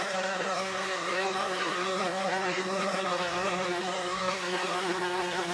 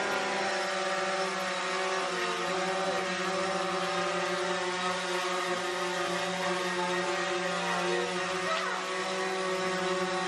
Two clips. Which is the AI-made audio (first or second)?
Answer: first